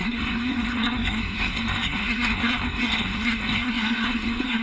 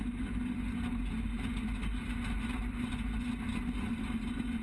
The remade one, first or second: first